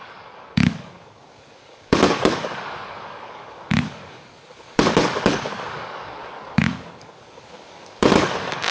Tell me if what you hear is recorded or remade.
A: remade